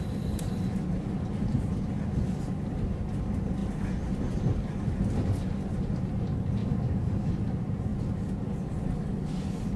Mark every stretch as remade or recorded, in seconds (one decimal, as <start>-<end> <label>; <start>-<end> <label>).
0.0-6.6 recorded; 6.6-7.3 remade; 7.3-9.8 recorded